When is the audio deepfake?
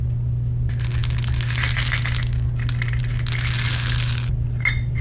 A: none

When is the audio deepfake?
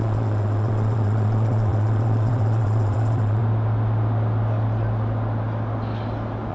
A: 0.0-3.4 (vocoder, WaveNeXt)